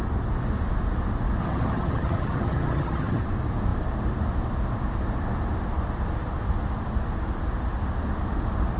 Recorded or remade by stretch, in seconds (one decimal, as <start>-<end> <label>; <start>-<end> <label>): 0.0-1.4 recorded; 1.4-3.2 remade; 3.2-8.8 recorded